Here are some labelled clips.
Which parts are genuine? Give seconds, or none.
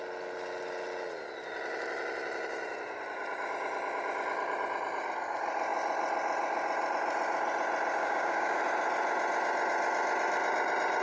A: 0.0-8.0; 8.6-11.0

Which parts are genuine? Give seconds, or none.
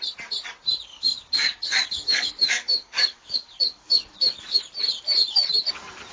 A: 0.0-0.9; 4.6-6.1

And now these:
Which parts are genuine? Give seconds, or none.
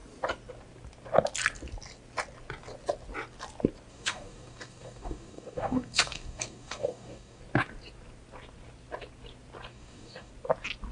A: 0.0-3.9; 7.4-9.7; 10.3-10.9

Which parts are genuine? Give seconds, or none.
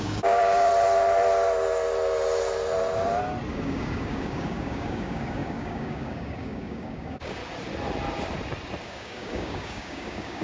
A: 0.7-3.5; 7.4-8.8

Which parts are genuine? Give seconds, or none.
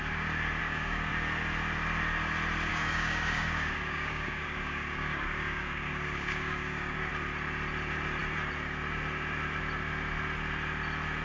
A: 0.0-0.6; 1.1-2.7; 7.1-11.2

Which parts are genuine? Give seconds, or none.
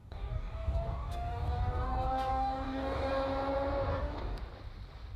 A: 3.1-3.9; 4.4-5.2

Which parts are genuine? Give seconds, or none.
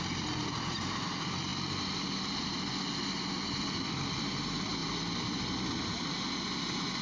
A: 0.0-7.0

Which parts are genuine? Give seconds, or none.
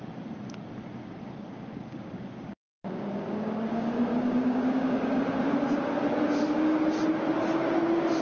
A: 0.0-1.0; 5.2-8.2